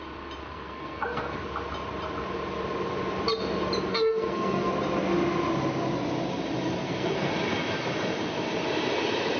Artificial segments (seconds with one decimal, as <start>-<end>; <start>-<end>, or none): 0.4-1.4; 3.9-4.7; 6.8-7.3